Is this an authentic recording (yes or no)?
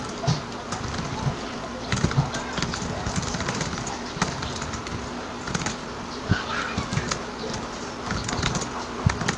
yes